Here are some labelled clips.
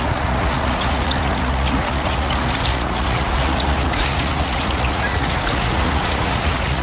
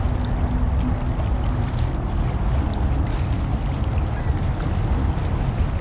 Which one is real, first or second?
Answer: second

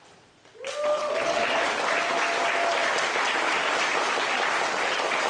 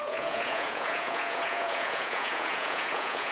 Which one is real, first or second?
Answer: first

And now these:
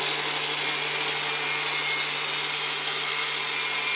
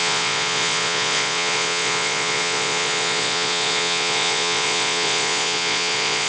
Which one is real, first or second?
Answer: first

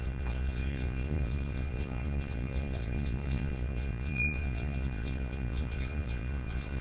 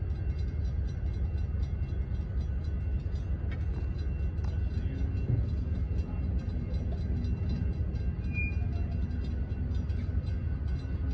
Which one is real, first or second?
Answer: second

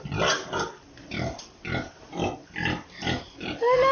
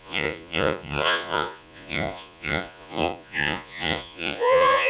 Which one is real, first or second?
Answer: first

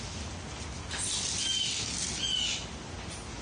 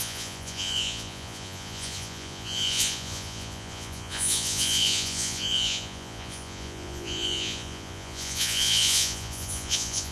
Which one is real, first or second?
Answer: first